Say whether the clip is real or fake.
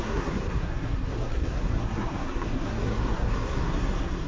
fake